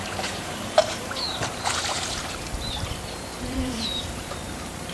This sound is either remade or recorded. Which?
remade